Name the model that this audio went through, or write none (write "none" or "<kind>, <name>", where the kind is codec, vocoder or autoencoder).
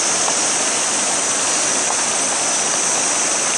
none